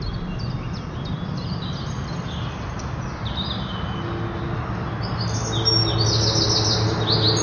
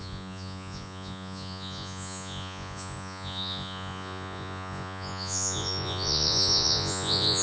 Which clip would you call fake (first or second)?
second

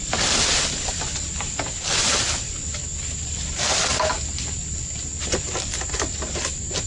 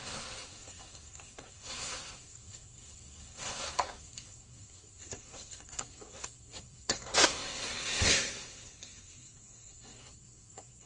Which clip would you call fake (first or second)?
second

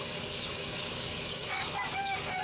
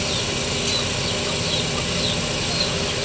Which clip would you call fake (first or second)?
first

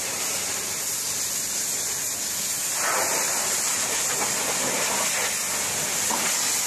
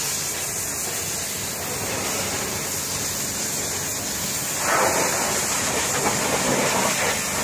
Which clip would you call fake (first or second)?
first